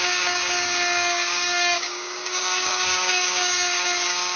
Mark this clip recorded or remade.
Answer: remade